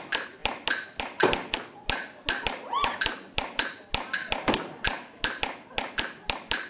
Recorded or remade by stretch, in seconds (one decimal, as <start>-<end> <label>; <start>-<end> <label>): 0.0-6.7 recorded